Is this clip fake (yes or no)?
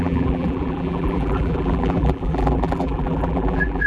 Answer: yes